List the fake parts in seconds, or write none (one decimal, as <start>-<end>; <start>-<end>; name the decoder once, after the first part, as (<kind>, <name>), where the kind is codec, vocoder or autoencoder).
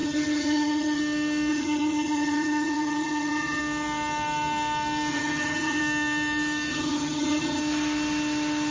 0.0-1.0 (vocoder, HiFi-GAN); 1.5-3.6; 5.1-5.8; 6.7-7.6